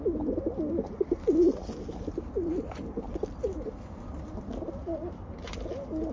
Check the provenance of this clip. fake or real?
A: real